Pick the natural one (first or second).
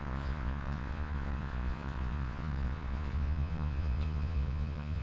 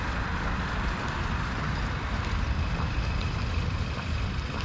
second